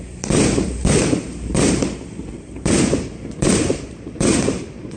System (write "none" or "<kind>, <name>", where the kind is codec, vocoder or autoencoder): vocoder, BigVGAN v2